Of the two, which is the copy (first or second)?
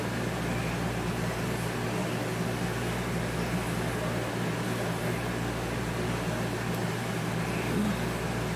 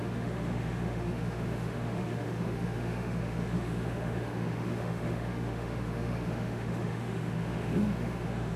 second